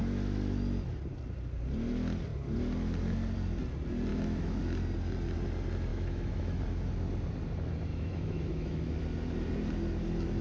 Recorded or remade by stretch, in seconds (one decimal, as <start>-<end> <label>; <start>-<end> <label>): 0.0-4.1 recorded; 4.1-4.6 remade; 4.6-5.9 recorded; 5.9-6.6 remade; 6.6-7.9 recorded; 7.9-9.0 remade; 9.0-10.4 recorded